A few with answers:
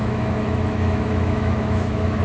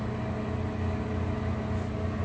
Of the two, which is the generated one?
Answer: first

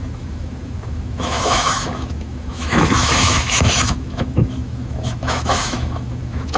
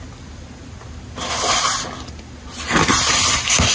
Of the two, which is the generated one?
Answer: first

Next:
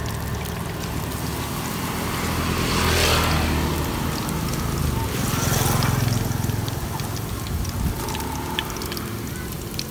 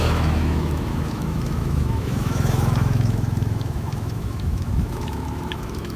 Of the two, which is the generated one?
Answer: second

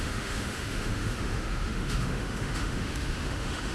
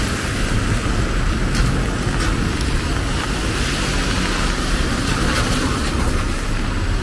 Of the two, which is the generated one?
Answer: first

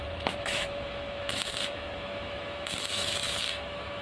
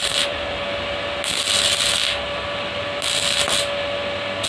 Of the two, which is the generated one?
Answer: first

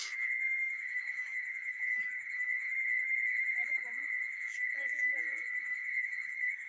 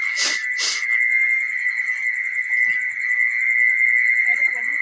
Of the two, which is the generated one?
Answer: first